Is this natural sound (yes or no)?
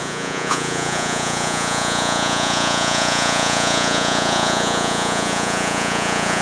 no